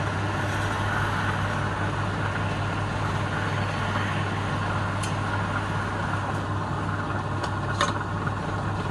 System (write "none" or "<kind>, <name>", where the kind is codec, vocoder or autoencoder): none